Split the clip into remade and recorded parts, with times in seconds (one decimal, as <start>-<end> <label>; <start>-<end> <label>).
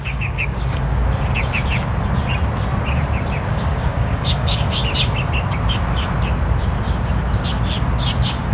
0.0-1.0 remade; 1.0-3.5 recorded; 3.5-4.8 remade; 4.8-8.5 recorded